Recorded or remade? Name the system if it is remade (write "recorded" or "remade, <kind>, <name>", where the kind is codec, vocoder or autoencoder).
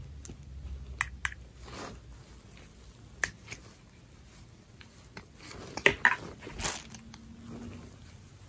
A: recorded